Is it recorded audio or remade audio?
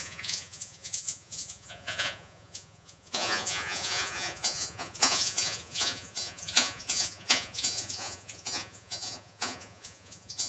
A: remade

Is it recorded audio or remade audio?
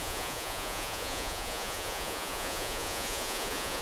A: remade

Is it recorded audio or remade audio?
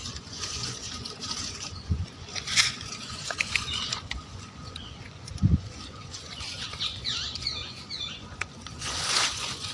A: remade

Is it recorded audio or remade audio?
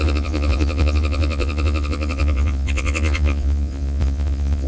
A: remade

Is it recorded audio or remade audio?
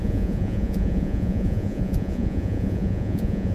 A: remade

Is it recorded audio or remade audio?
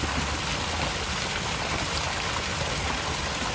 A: recorded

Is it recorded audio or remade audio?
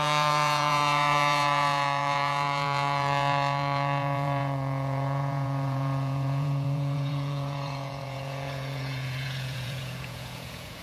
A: remade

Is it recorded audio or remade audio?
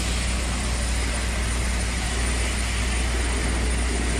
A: recorded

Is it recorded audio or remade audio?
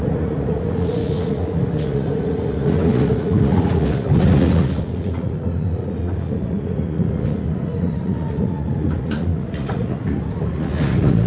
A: remade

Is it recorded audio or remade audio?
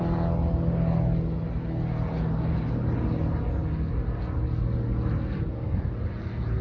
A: recorded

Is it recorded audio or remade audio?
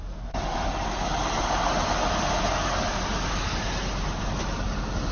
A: recorded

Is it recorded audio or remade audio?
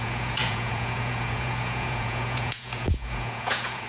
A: remade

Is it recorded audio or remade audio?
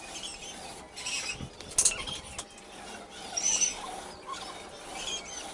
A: recorded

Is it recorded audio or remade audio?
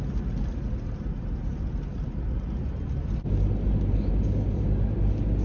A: recorded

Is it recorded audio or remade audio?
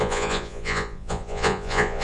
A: remade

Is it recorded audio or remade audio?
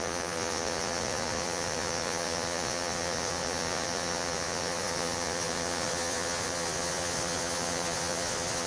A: remade